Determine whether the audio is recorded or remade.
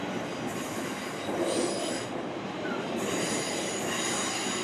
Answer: recorded